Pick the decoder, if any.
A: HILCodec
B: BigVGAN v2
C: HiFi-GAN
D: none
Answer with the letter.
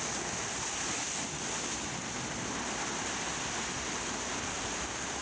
D